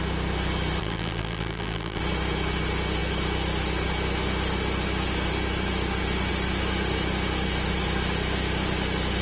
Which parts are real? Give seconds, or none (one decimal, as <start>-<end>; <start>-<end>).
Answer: 0.0-0.8; 2.0-9.2